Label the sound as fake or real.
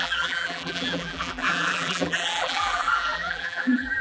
fake